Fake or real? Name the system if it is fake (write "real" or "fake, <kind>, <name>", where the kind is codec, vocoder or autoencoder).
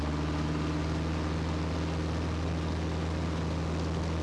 real